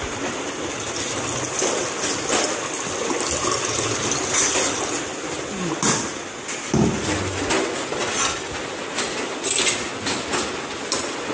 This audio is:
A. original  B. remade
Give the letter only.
A